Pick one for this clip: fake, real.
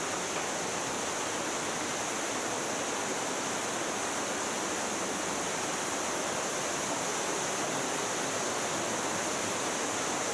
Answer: real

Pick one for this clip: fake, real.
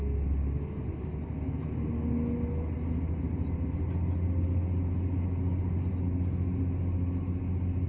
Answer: real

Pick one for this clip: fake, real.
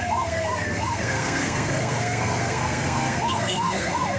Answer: fake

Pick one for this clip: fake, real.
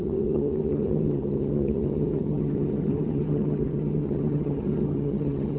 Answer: fake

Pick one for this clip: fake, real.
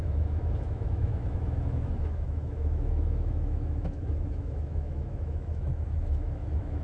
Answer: fake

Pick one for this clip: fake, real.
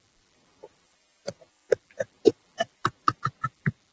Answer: fake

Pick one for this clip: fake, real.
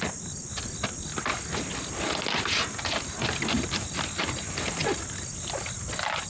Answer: real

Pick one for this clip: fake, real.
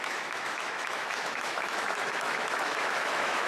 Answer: fake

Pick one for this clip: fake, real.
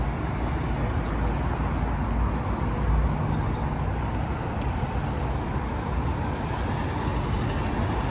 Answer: real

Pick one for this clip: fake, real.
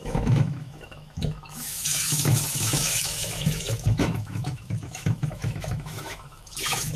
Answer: fake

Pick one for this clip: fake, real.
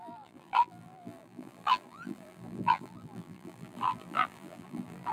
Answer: fake